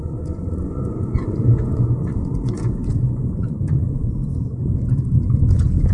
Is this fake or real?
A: fake